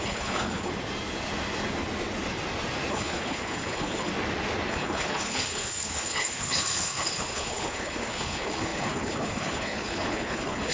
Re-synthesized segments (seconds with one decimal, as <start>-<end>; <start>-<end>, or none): 0.0-0.7; 2.9-4.1; 4.7-10.7